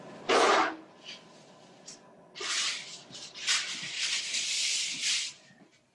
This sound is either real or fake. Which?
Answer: real